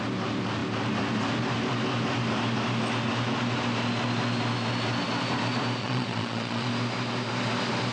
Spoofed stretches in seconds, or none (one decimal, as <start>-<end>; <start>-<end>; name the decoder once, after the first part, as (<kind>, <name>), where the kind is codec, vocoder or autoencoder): 5.8-6.7 (vocoder, Vocos)